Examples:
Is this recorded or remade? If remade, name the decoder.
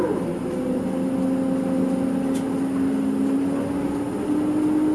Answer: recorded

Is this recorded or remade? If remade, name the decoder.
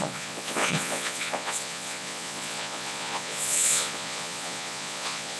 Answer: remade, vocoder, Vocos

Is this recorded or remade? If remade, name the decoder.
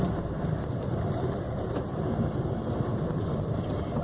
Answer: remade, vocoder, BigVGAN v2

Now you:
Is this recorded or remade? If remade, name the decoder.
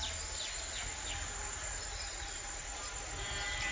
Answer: recorded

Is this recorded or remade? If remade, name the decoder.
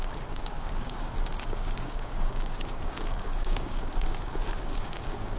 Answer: remade, codec, DAC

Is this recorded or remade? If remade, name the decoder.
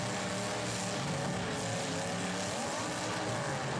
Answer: recorded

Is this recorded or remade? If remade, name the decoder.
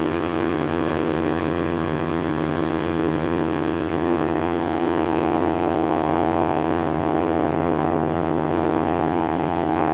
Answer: remade, vocoder, HiFi-GAN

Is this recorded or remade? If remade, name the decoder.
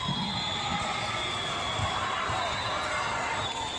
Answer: recorded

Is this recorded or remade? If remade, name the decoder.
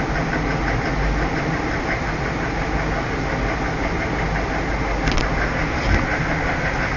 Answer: recorded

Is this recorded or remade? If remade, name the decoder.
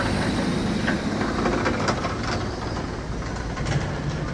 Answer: recorded